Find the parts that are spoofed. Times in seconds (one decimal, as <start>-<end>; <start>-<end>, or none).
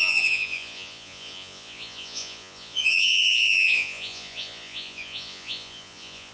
0.0-6.3